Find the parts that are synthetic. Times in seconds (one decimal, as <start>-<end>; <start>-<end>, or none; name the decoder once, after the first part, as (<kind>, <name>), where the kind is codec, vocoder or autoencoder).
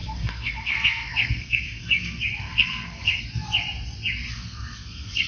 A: 0.0-3.2 (codec, SNAC); 4.3-5.3